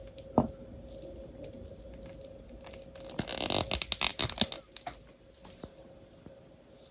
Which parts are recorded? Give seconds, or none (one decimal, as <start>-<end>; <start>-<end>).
0.0-6.9